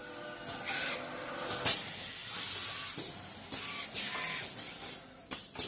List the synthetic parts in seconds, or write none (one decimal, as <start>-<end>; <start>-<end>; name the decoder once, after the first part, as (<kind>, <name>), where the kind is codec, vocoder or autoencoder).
none